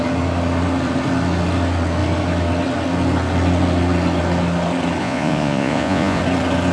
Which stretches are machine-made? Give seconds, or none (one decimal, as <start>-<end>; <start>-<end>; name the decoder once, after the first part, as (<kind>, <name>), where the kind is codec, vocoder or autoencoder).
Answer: 5.0-6.2 (vocoder, Vocos)